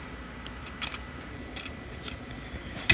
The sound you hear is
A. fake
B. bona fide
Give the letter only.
B